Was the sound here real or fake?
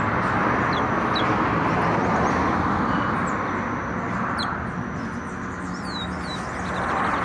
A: real